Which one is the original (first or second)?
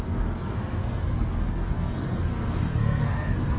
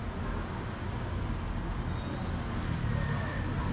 second